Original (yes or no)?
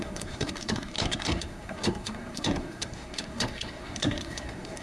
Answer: no